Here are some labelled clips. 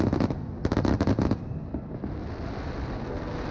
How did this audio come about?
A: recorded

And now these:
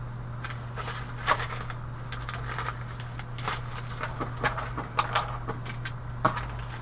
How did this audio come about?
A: recorded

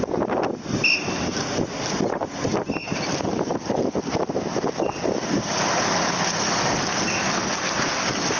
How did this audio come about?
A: recorded